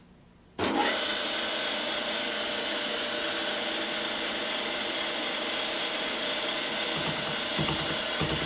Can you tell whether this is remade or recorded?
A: recorded